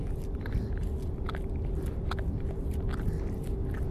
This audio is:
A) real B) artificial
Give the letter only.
A